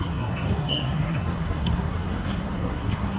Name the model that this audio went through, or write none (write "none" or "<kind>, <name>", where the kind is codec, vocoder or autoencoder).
codec, SNAC